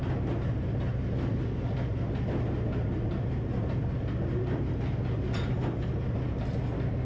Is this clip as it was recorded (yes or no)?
yes